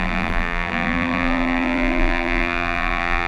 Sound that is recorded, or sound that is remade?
remade